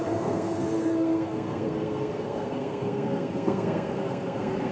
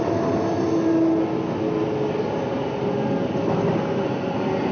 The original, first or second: second